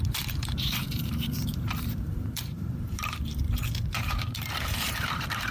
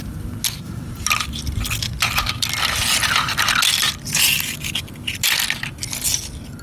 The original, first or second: second